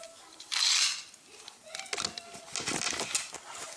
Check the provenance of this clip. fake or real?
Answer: real